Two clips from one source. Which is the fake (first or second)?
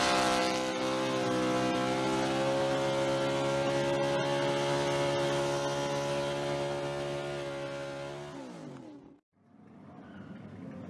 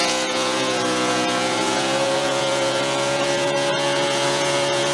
second